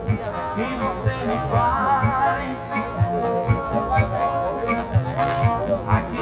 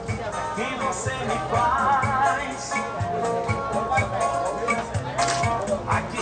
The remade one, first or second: first